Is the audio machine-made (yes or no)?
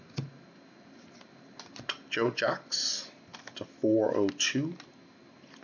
no